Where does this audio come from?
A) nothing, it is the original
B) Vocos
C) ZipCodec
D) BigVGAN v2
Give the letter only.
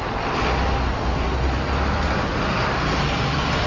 A